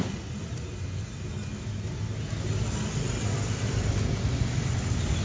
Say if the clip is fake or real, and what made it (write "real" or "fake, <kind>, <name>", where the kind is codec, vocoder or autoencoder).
real